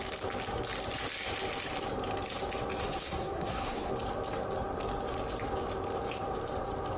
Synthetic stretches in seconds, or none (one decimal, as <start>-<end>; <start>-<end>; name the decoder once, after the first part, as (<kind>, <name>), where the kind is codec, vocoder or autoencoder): 2.8-3.9 (codec, SNAC)

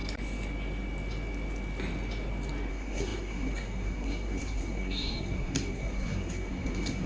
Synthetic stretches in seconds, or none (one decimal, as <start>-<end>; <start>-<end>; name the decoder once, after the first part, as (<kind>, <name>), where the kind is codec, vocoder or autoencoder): 2.7-7.1 (codec, SNAC)

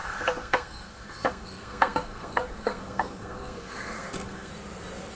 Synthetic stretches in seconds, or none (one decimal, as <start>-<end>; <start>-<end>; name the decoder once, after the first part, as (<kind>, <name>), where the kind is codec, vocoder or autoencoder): 0.0-4.5 (codec, SNAC)

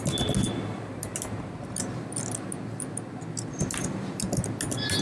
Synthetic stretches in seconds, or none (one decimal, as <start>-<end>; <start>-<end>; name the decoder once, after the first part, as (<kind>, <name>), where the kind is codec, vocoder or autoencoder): none

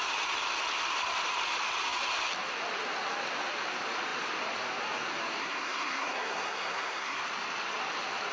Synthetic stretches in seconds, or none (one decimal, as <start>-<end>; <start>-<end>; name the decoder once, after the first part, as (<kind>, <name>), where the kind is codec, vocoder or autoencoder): 5.4-7.2 (codec, SNAC)